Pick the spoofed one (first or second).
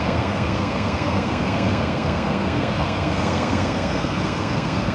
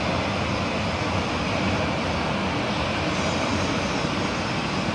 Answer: first